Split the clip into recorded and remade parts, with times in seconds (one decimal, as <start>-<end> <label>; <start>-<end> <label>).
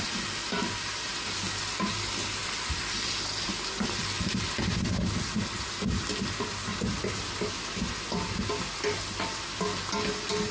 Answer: 0.0-2.4 recorded; 2.4-5.0 remade; 5.0-10.5 recorded